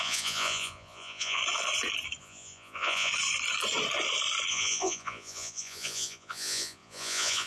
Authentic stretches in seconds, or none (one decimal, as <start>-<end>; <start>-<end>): 1.4-2.2; 3.1-4.5